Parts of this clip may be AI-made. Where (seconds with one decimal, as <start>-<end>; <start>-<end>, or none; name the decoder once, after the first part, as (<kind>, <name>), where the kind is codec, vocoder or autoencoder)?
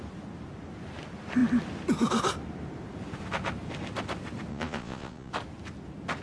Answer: 4.5-5.3 (vocoder, Vocos)